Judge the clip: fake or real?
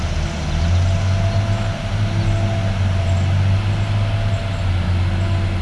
real